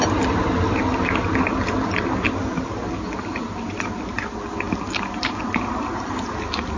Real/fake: real